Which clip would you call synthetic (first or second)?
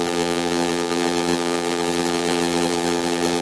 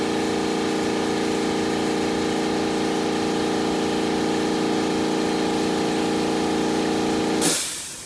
first